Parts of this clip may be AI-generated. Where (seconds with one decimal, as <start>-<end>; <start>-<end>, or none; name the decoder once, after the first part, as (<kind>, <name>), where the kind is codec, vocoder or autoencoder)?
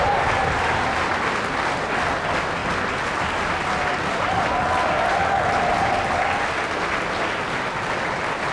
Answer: none